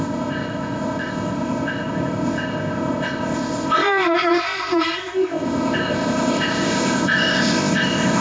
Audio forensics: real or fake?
fake